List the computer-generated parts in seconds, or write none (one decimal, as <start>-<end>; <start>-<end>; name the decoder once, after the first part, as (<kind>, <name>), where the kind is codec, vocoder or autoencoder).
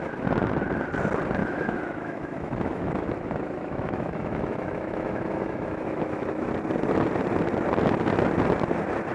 1.4-6.5 (autoencoder, DAC-VAE)